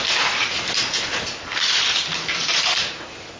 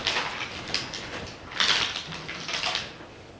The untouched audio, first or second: second